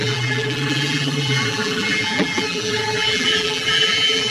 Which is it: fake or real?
fake